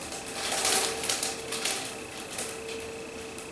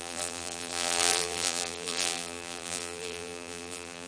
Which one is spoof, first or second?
second